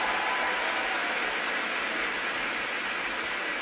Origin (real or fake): real